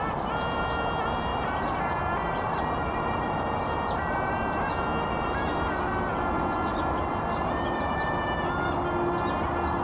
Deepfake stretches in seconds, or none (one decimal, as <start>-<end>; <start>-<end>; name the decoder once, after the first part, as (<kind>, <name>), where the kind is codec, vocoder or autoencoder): 1.3-4.3 (vocoder, BigVGAN v2); 6.7-8.0